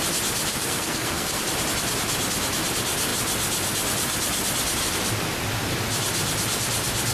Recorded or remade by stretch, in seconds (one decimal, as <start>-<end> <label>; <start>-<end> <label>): 0.0-0.5 recorded; 0.5-1.4 remade; 1.4-7.1 recorded